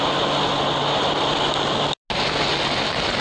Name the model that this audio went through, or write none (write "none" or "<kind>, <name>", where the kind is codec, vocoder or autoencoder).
none